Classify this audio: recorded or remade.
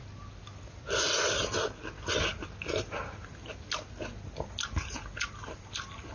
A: recorded